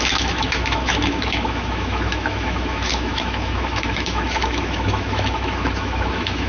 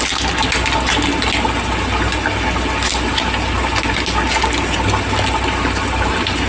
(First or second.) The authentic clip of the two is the second